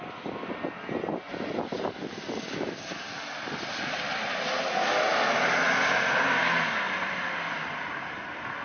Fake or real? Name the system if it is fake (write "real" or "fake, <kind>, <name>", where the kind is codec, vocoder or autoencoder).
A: real